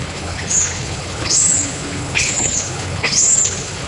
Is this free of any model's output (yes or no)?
no